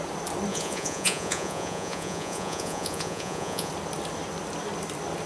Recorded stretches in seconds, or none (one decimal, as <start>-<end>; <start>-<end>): 0.0-0.5; 3.7-5.3